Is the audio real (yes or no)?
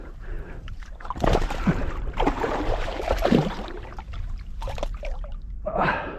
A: no